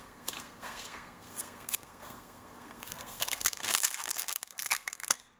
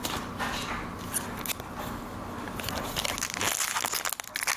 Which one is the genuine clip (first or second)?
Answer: second